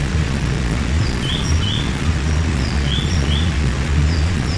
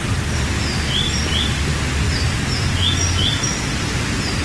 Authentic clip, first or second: second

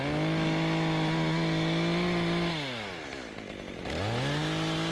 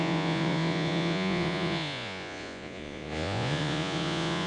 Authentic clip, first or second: first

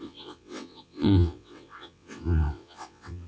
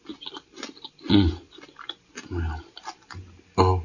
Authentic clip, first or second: second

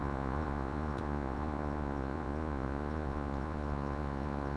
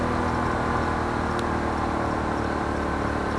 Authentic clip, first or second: second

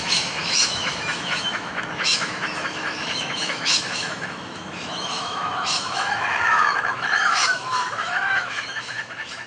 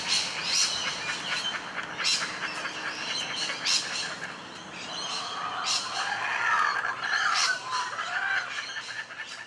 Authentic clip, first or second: second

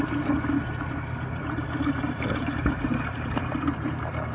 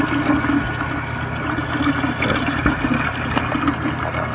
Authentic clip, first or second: second